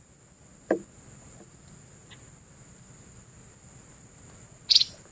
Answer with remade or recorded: recorded